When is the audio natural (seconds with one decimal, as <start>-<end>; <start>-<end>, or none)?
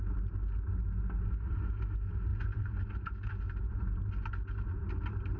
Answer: 0.0-2.3; 3.6-5.4